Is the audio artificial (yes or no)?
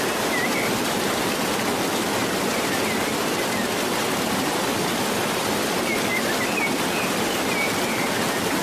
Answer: no